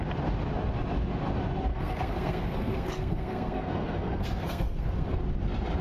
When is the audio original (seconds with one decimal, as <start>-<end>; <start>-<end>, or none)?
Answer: 0.0-1.7; 5.2-5.8